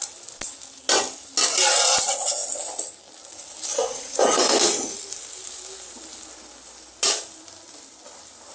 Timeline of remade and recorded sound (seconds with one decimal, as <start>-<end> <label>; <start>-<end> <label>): 0.0-3.8 recorded; 3.8-4.5 remade; 4.5-8.5 recorded

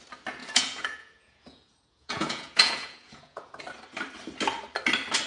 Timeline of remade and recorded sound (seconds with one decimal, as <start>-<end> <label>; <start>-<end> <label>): 0.0-0.4 recorded; 0.4-3.6 remade; 3.6-5.3 recorded